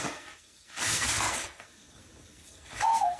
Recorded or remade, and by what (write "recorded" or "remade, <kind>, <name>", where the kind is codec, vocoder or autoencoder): remade, codec, SNAC